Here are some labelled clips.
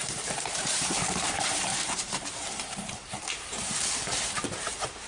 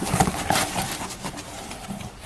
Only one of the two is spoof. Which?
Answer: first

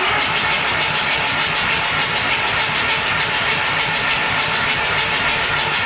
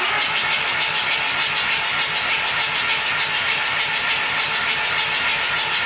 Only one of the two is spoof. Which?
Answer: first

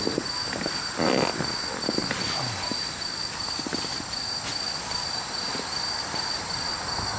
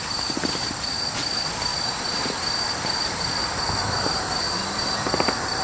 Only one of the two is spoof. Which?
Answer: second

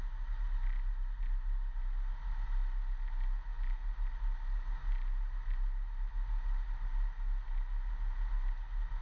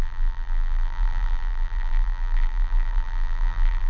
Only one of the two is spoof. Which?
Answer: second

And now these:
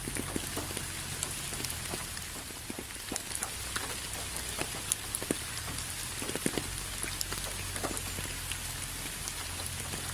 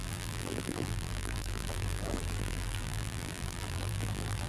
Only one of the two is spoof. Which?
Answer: second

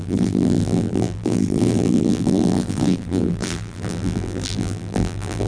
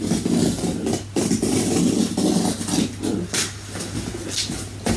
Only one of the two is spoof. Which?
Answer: first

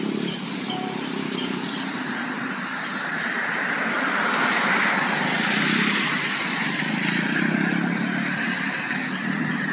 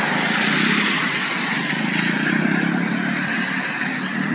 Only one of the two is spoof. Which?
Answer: first